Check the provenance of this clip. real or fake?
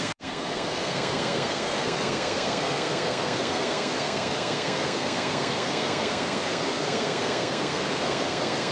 fake